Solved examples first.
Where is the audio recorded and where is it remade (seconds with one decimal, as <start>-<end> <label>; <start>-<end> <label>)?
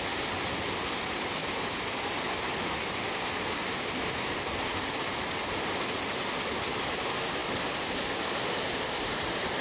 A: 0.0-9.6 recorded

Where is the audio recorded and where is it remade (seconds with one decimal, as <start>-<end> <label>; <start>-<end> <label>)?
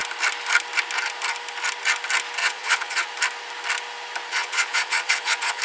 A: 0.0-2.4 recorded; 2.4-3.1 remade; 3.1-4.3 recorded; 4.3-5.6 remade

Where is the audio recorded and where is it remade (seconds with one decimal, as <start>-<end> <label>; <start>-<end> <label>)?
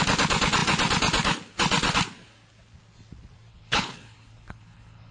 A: 0.0-3.5 recorded; 3.5-5.1 remade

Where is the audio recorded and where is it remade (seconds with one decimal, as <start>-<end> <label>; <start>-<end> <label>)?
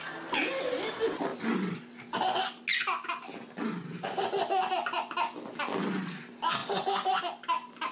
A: 0.0-7.9 recorded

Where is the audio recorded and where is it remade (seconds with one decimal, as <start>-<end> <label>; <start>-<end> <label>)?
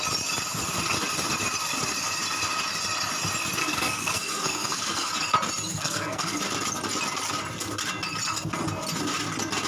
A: 0.0-3.6 recorded; 3.6-5.1 remade; 5.1-5.7 recorded; 5.7-6.4 remade; 6.4-9.7 recorded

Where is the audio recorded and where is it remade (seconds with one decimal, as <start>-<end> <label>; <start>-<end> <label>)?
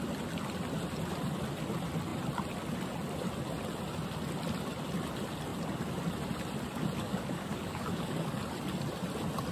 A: 0.0-7.0 recorded; 7.0-8.3 remade; 8.3-9.5 recorded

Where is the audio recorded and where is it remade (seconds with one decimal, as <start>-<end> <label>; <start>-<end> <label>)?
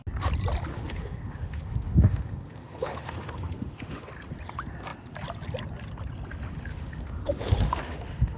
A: 0.0-0.7 recorded; 0.7-4.1 remade; 4.1-6.7 recorded; 6.7-8.4 remade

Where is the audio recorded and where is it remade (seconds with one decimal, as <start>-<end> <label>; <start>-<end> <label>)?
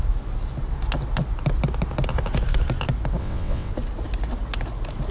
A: 0.0-3.2 recorded; 3.2-3.7 remade; 3.7-5.1 recorded